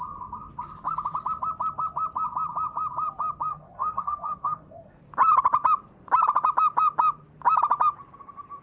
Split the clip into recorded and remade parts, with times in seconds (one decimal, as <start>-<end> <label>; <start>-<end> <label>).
0.0-3.5 recorded; 3.5-5.0 remade; 5.0-8.6 recorded